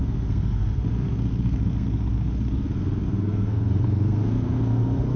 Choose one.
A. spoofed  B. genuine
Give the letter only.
A